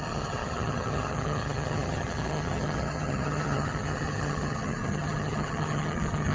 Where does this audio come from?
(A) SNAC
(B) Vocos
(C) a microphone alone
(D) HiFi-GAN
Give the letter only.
D